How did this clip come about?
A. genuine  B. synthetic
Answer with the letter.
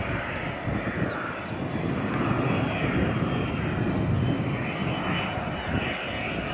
A